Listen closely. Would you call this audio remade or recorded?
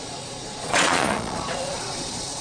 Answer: remade